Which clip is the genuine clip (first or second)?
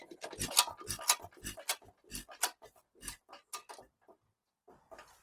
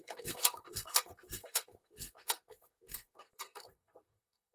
first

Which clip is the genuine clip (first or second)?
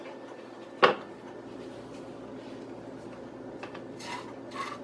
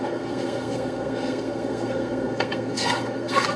first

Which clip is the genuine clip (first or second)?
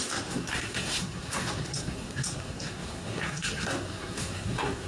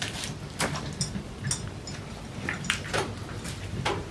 second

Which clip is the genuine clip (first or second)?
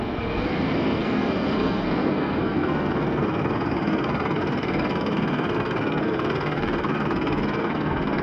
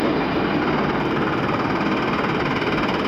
second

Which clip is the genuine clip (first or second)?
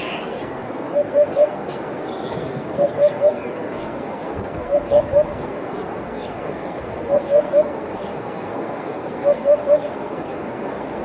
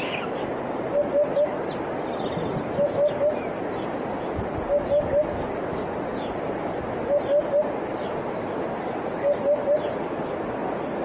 second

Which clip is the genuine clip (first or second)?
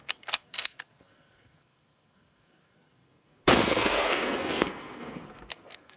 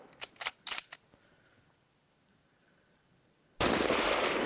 second